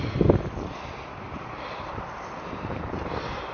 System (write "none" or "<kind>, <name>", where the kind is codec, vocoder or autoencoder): none